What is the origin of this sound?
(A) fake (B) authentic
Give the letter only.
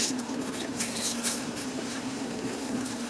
A